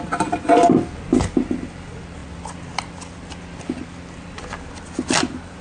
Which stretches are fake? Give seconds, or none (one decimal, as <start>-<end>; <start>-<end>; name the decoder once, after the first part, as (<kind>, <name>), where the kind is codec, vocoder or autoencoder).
none